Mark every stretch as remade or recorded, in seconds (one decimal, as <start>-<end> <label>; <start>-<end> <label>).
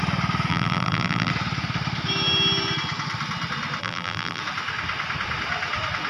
0.0-0.5 recorded; 0.5-1.3 remade; 1.3-3.8 recorded; 3.8-4.4 remade; 4.4-6.1 recorded